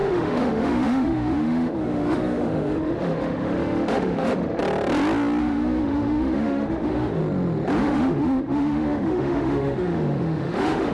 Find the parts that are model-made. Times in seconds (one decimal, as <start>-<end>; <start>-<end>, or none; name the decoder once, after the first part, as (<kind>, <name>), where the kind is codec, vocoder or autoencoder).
0.0-4.6 (autoencoder, DAC-VAE); 5.4-7.2; 7.8-10.9